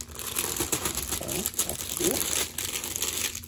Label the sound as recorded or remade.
recorded